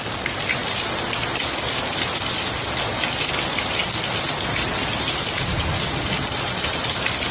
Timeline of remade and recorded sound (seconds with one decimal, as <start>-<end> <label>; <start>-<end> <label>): 0.0-7.3 recorded